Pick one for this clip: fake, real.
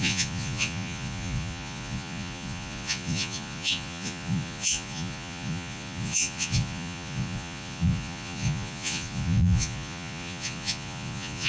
fake